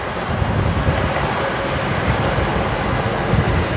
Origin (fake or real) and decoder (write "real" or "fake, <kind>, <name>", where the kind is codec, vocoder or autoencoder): real